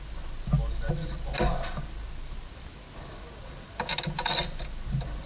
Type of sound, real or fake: real